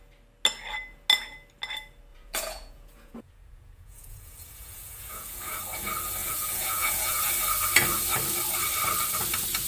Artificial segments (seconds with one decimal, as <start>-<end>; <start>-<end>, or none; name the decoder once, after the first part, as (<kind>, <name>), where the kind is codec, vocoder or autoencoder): 2.1-5.6 (vocoder, Vocos); 6.2-7.3